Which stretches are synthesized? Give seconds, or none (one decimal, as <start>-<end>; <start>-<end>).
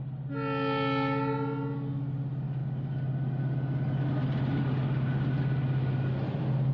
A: none